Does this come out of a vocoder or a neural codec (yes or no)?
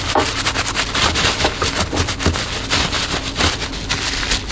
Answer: no